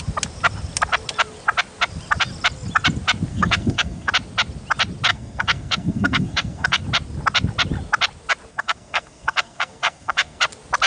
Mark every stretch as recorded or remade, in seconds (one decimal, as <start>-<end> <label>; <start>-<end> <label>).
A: 0.0-3.3 recorded; 3.3-4.1 remade; 4.1-5.1 recorded; 5.1-6.8 remade; 6.8-8.5 recorded; 8.5-10.4 remade; 10.4-10.9 recorded